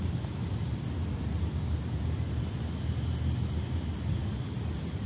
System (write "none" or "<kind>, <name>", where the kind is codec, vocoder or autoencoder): none